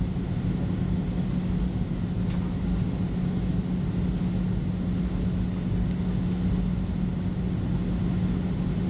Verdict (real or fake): real